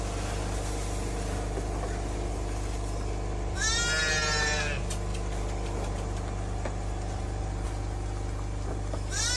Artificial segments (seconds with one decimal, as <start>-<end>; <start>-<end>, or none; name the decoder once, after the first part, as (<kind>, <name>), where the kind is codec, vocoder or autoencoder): none